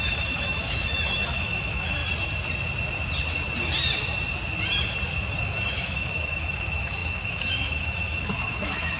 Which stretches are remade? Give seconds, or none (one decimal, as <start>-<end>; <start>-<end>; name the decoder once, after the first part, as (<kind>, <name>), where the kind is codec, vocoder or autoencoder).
0.0-2.0 (autoencoder, DAC-VAE); 5.4-9.0